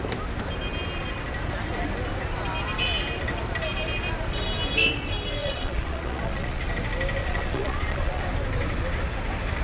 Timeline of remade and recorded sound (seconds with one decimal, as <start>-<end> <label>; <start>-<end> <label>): 0.0-5.4 recorded; 5.4-6.7 remade; 6.7-7.2 recorded; 7.2-8.2 remade; 8.2-9.6 recorded